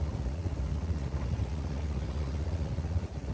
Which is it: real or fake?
fake